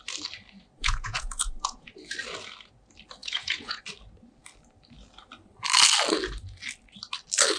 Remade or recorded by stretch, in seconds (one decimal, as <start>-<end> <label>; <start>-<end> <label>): 0.0-0.8 recorded; 0.8-1.9 remade; 1.9-3.2 recorded; 3.2-3.8 remade; 3.8-7.6 recorded